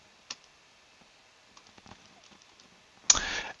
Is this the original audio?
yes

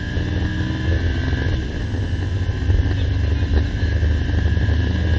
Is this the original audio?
yes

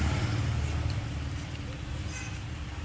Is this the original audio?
yes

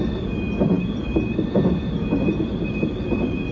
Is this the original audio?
yes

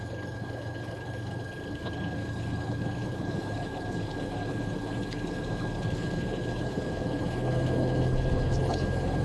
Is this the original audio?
no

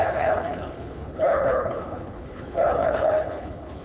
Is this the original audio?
no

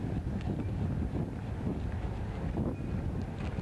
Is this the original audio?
yes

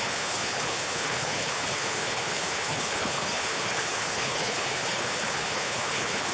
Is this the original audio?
no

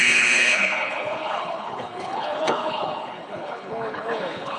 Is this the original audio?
no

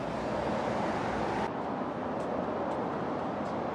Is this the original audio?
yes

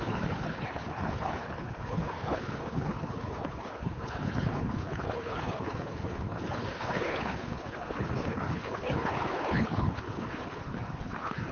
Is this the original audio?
no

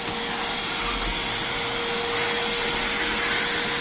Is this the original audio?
yes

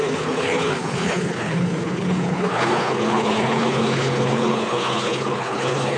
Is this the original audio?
no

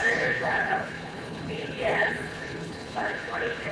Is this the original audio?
no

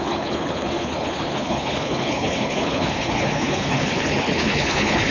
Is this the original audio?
no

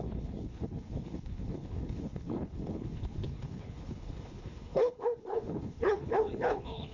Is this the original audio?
no